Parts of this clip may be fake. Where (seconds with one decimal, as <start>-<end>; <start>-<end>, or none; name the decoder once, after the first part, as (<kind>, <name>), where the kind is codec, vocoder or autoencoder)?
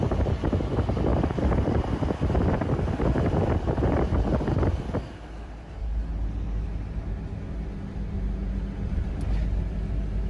1.1-5.8 (vocoder, BigVGAN v2)